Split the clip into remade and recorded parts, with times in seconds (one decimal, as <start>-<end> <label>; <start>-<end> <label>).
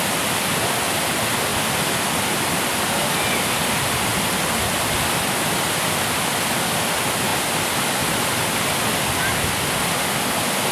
0.0-10.7 recorded